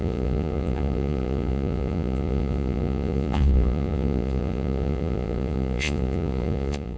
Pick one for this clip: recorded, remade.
remade